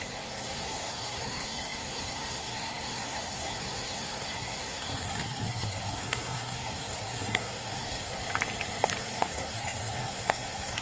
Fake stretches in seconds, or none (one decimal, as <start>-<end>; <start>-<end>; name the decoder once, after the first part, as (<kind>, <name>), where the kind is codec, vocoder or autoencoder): 0.0-8.2 (codec, SNAC); 9.0-10.8